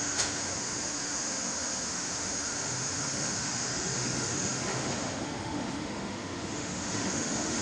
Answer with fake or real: fake